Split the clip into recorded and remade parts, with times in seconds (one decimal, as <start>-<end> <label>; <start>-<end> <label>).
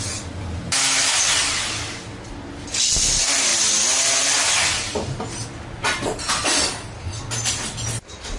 0.0-8.4 recorded